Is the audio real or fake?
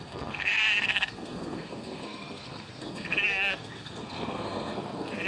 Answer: fake